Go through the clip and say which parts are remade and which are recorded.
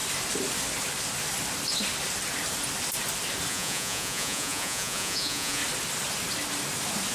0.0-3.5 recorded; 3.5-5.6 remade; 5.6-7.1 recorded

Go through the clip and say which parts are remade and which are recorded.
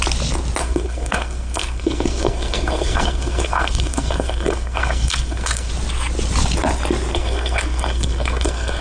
0.0-0.6 recorded; 0.6-5.7 remade; 5.7-7.1 recorded; 7.1-8.8 remade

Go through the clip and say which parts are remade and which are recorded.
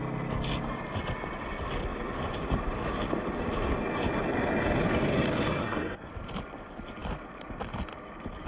0.0-5.6 recorded; 5.6-6.1 remade; 6.1-8.5 recorded